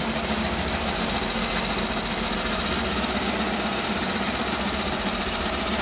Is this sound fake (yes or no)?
no